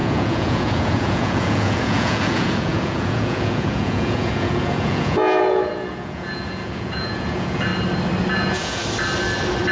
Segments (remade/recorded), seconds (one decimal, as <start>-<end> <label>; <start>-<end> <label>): 0.0-7.7 remade; 7.7-8.3 recorded; 8.3-8.8 remade; 8.8-9.7 recorded